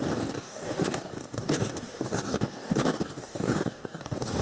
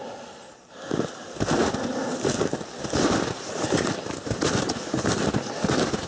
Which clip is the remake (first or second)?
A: first